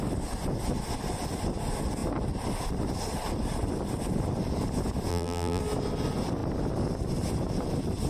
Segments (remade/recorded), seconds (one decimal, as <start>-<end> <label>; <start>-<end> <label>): 0.0-5.1 recorded; 5.1-5.6 remade; 5.6-8.1 recorded